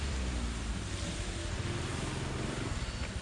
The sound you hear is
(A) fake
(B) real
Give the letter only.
B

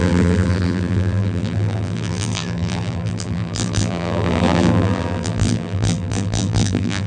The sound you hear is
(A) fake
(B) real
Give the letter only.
A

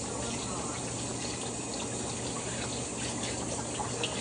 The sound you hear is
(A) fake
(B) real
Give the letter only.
B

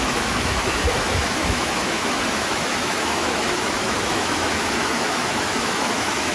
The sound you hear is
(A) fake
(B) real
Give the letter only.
A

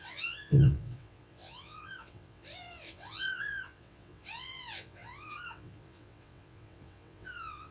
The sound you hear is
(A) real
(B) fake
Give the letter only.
B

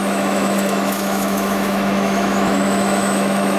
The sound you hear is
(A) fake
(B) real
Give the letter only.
A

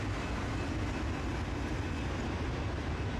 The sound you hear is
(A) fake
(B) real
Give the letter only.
B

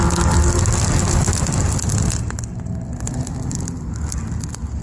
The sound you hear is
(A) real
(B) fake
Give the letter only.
A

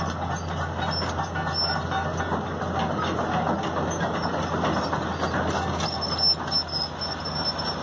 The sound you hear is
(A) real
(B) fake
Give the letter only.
A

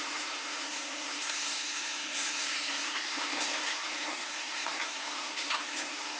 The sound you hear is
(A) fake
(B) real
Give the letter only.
A